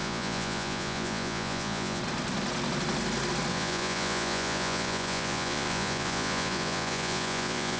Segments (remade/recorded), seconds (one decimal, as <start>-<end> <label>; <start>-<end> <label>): 0.0-2.0 remade; 2.0-3.5 recorded; 3.5-7.8 remade